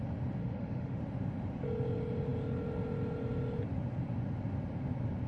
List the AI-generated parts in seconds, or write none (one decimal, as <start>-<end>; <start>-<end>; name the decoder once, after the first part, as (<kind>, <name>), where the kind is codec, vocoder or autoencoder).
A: 0.4-1.0 (autoencoder, DAC-VAE)